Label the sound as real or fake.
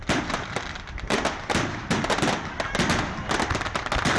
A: real